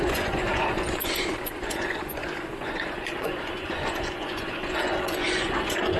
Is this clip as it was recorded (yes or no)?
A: no